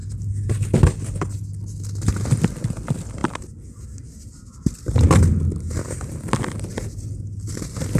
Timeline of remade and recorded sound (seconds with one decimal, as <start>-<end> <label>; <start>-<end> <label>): 0.0-8.0 recorded